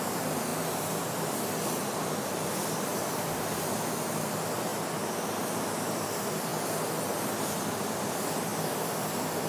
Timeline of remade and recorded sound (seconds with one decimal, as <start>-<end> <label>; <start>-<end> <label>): 0.0-0.5 remade; 0.5-1.0 recorded; 1.0-4.7 remade; 4.7-5.4 recorded; 5.4-6.5 remade; 6.5-7.0 recorded; 7.0-8.5 remade; 8.5-9.5 recorded